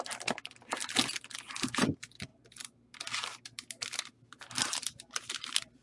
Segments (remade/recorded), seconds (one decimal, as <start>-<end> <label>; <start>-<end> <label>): 0.0-5.8 recorded